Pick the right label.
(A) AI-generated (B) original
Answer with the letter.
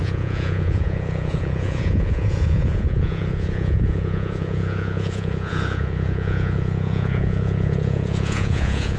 A